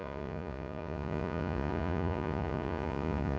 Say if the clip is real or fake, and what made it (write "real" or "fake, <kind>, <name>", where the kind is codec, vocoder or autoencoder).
fake, vocoder, Vocos